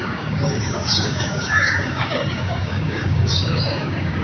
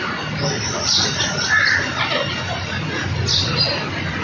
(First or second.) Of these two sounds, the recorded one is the second